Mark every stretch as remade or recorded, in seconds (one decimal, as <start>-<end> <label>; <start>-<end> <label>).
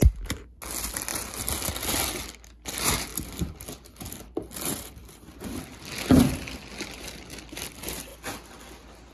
0.0-0.6 remade; 0.6-3.1 recorded; 3.1-5.6 remade; 5.6-9.1 recorded